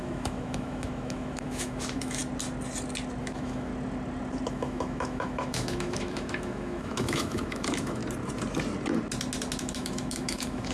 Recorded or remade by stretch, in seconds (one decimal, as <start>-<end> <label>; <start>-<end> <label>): 0.0-2.2 remade; 2.2-3.2 recorded; 3.2-3.7 remade; 3.7-4.5 recorded; 4.5-8.0 remade; 8.0-9.6 recorded; 9.6-10.7 remade